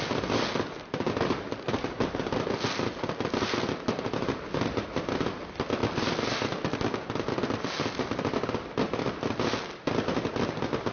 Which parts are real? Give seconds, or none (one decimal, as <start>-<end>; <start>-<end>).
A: 0.0-10.9

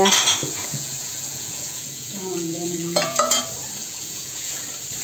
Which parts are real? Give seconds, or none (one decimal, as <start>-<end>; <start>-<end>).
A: 0.0-0.4; 3.4-3.8; 4.6-5.0